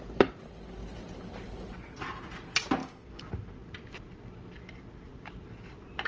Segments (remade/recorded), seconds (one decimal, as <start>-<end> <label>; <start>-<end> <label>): 0.0-2.8 recorded; 2.8-3.3 remade; 3.3-6.1 recorded